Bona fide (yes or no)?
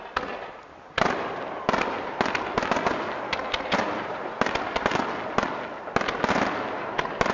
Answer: yes